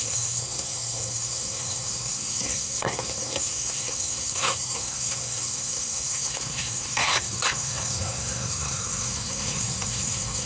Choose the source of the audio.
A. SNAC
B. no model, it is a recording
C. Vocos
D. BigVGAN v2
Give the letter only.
A